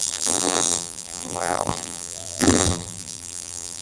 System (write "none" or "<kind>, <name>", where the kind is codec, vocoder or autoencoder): vocoder, BigVGAN v2